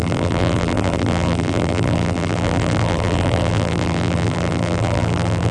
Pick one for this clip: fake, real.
fake